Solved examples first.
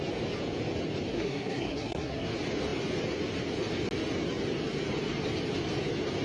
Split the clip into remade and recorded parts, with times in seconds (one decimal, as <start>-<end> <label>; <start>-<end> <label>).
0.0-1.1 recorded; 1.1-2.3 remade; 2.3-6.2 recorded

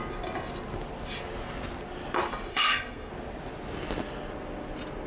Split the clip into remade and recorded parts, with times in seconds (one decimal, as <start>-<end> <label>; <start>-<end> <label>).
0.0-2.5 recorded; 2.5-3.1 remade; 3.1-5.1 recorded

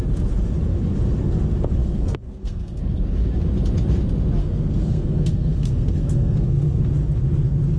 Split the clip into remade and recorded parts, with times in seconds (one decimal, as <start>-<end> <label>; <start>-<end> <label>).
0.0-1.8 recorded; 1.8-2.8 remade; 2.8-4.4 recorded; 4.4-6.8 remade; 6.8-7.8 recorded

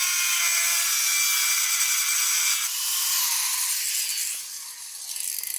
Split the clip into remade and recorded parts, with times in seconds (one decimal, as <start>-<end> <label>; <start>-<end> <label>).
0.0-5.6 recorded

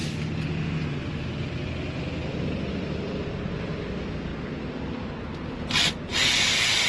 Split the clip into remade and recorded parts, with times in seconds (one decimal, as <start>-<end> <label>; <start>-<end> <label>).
0.0-6.9 recorded

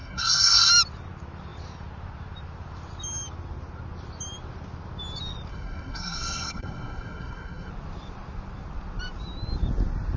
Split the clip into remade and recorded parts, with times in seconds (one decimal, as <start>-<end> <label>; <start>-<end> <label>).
0.0-0.7 remade; 0.7-5.5 recorded; 5.5-7.7 remade; 7.7-10.2 recorded